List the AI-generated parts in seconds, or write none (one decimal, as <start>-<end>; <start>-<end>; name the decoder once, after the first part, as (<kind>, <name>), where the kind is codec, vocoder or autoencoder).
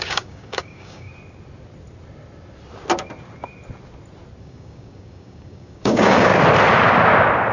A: 0.0-1.1 (codec, DAC); 4.4-6.3